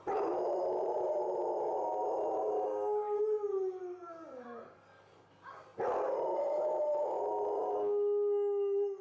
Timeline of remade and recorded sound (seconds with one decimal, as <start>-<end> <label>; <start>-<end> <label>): 0.0-4.0 recorded; 4.0-4.8 remade; 4.8-9.0 recorded